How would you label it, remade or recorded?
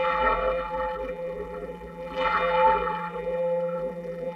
remade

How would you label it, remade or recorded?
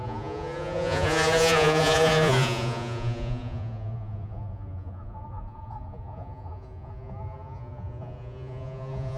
remade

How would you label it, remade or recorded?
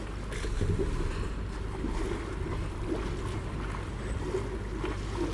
recorded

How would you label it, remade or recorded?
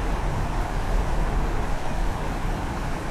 remade